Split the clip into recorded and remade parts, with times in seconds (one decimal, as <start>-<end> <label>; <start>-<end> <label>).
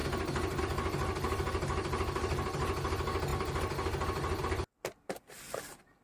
0.0-6.0 recorded